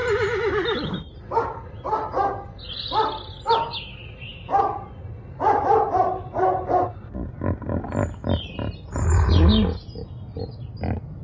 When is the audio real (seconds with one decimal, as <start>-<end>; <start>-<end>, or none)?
2.7-11.2